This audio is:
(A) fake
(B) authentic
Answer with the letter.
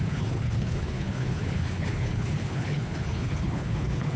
A